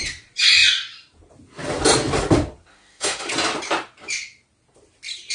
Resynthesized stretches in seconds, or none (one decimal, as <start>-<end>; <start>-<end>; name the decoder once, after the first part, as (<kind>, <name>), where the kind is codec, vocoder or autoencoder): 2.7-3.3 (autoencoder, DAC-VAE)